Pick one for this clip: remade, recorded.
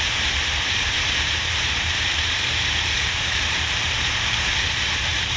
remade